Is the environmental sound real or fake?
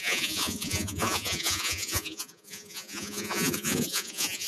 fake